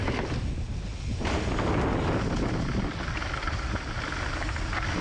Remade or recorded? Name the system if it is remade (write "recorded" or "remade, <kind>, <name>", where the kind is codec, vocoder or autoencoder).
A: recorded